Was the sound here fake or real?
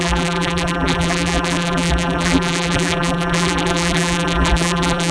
fake